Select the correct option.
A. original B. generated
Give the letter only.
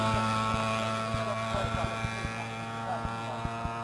A